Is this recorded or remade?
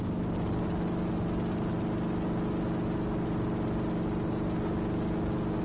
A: recorded